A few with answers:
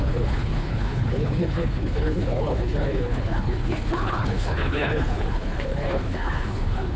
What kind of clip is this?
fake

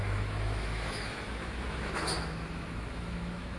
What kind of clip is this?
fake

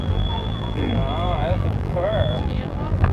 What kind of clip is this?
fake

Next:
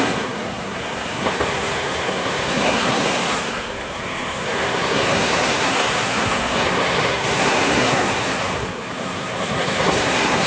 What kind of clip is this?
fake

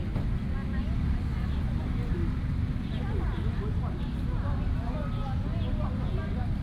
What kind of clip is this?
real